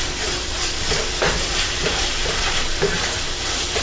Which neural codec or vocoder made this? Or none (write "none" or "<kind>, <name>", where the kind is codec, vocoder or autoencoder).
none